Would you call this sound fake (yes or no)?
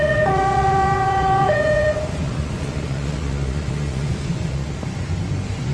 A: yes